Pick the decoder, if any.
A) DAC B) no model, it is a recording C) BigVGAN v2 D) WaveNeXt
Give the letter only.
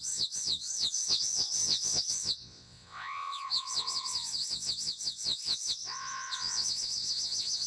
D